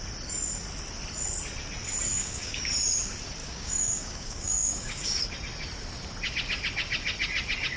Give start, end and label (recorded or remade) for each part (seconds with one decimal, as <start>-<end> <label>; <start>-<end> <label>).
0.0-2.1 recorded; 2.1-2.7 remade; 2.7-3.4 recorded; 3.4-5.2 remade; 5.2-7.8 recorded